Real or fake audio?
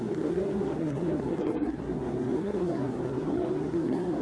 fake